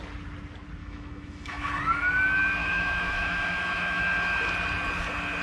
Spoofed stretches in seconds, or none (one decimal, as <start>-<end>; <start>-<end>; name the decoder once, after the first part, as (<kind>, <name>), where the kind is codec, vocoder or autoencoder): 0.8-1.7 (autoencoder, DAC-VAE); 2.6-4.0